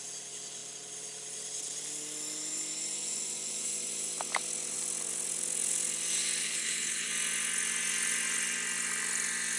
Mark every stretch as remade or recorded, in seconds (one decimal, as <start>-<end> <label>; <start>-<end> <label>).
0.0-6.4 recorded; 6.4-7.1 remade; 7.1-9.6 recorded